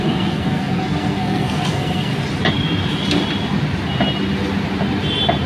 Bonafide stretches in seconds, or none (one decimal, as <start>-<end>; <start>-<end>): 2.1-5.5